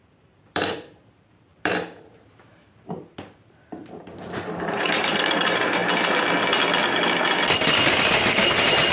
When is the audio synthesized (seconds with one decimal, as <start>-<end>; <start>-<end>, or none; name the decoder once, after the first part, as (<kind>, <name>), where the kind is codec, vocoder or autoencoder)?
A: 0.0-5.8 (vocoder, BigVGAN v2); 8.0-8.9